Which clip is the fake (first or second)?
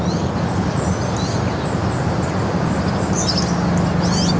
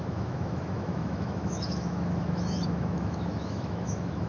second